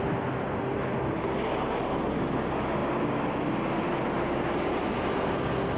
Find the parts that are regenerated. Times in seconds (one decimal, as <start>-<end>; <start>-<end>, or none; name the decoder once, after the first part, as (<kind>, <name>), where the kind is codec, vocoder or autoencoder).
none